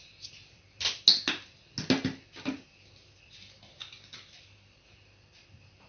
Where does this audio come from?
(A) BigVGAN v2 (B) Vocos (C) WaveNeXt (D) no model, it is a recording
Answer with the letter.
D